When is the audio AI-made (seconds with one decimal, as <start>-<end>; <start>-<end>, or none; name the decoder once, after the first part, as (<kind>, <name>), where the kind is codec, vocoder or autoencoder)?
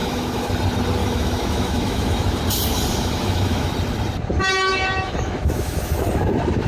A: 0.0-0.5 (autoencoder, DAC-VAE); 1.0-2.4; 2.9-3.7; 4.7-5.9